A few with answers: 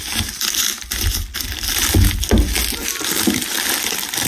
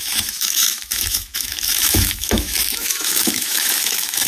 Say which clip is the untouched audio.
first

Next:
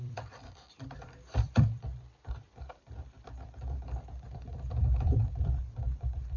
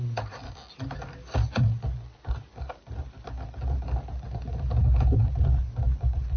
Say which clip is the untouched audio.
second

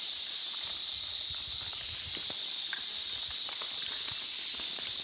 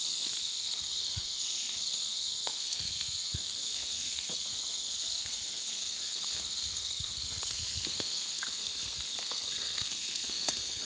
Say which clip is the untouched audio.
first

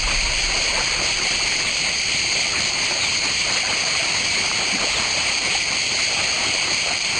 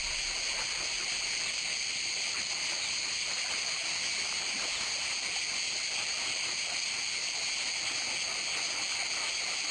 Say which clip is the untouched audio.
second